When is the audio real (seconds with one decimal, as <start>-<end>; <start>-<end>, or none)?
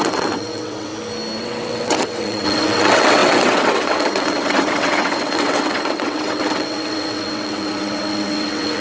0.9-1.4